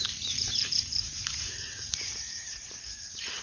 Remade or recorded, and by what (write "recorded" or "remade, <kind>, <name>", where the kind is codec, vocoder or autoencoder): remade, vocoder, BigVGAN v2